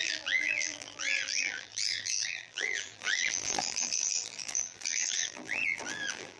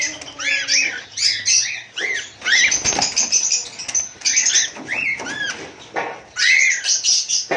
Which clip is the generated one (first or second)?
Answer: first